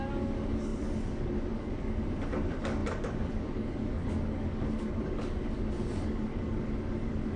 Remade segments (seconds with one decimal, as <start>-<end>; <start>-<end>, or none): 0.0-7.4